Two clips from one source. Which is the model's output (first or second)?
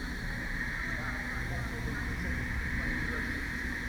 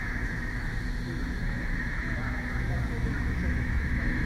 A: second